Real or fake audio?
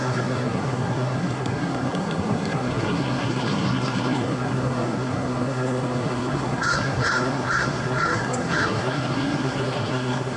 fake